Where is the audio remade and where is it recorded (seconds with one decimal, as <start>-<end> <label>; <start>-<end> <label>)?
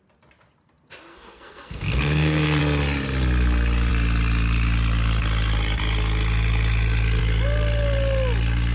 0.0-1.1 recorded; 1.1-2.6 remade; 2.6-8.7 recorded